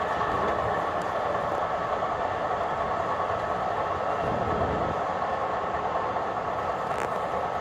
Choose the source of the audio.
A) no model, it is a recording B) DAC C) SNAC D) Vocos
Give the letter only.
A